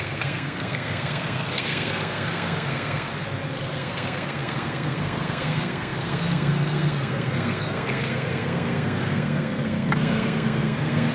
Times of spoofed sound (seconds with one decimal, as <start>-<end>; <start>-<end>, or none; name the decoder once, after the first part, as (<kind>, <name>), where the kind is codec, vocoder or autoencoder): 0.0-3.1 (codec, SNAC); 3.7-11.1